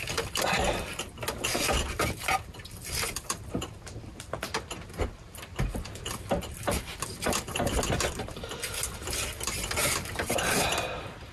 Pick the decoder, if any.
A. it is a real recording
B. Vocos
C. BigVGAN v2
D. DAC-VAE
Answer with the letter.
A